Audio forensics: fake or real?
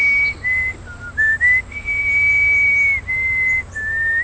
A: real